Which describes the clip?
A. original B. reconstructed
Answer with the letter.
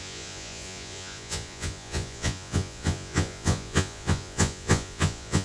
B